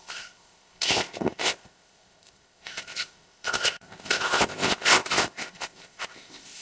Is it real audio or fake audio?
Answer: fake